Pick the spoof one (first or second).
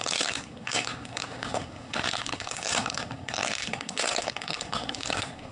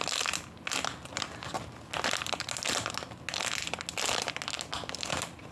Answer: first